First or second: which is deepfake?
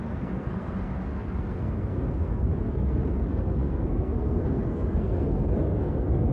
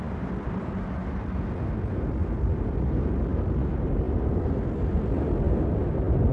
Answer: first